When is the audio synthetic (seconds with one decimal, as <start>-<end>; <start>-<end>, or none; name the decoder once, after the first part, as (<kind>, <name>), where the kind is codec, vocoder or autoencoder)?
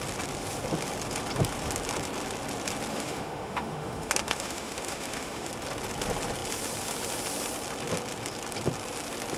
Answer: 2.9-5.5 (autoencoder, DAC-VAE)